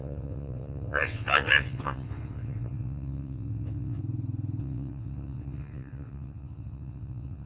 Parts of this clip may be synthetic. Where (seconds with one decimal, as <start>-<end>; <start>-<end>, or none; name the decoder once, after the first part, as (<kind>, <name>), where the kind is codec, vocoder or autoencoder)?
0.0-4.0 (vocoder, WaveNeXt); 4.6-7.5